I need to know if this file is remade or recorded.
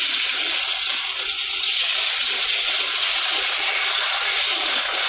remade